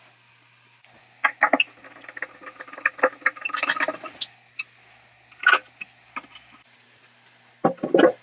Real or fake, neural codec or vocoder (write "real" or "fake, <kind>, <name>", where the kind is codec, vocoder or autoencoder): real